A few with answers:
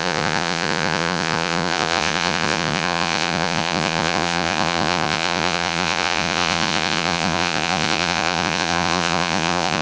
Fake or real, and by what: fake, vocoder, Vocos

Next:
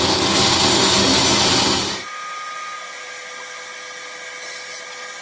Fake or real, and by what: real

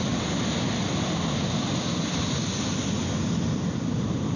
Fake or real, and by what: real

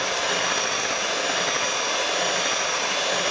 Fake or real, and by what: real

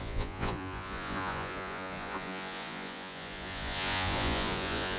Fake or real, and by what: fake, vocoder, Vocos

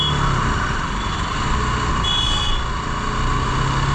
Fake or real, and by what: real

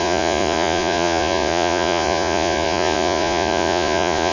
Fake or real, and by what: fake, vocoder, Vocos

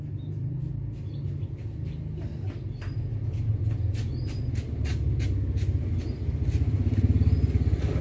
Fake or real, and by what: real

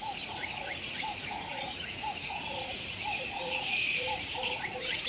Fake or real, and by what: fake, vocoder, Vocos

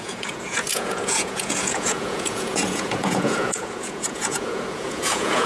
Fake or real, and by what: fake, vocoder, Vocos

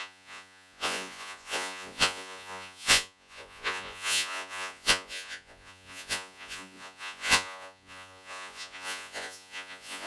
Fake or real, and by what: fake, vocoder, Vocos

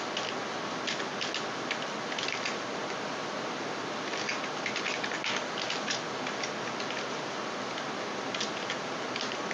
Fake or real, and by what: real